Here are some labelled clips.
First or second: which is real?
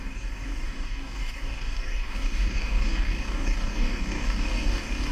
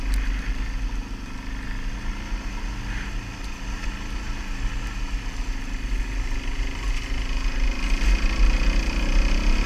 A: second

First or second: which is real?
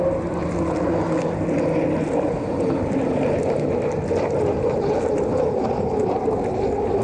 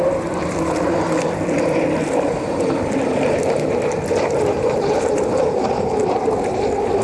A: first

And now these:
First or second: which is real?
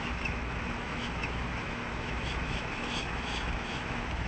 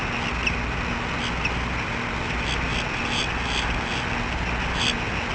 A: second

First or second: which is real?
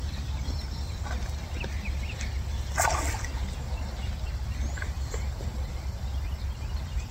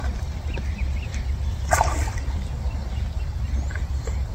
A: first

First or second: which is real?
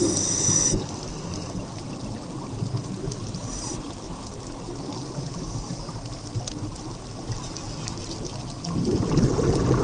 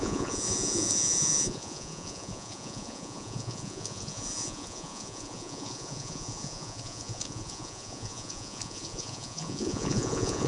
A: first